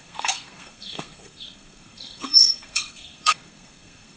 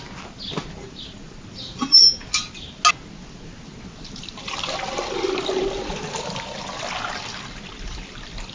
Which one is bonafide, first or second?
second